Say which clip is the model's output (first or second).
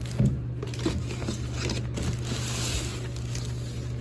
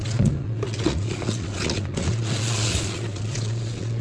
second